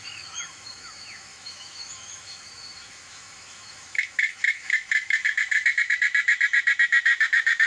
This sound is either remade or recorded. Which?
remade